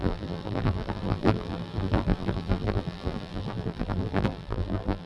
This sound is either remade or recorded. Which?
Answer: remade